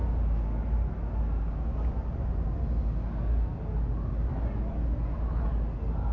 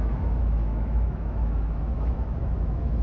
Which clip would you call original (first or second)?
first